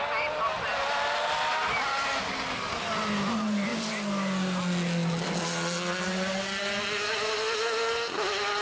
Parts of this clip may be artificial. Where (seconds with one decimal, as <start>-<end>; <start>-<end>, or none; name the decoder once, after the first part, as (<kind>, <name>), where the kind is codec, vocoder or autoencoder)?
none